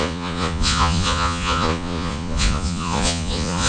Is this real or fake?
fake